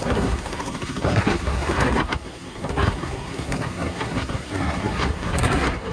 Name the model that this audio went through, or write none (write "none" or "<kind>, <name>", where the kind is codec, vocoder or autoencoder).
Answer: codec, SNAC